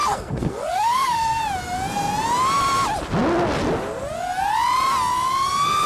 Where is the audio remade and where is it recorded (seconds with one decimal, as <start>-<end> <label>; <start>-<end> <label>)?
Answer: 0.0-1.4 remade; 1.4-5.9 recorded